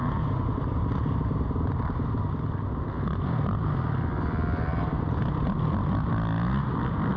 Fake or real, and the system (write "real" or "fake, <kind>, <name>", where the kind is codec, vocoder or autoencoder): real